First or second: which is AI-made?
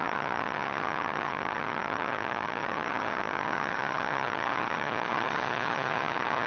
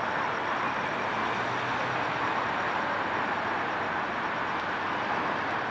first